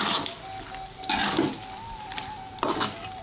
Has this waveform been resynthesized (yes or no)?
no